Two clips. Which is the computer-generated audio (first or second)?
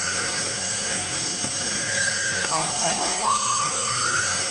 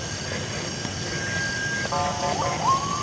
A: first